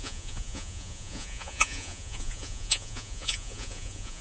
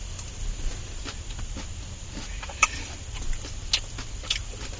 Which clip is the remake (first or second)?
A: first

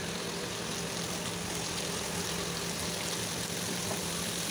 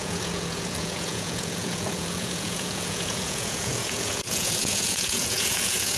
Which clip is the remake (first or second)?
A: second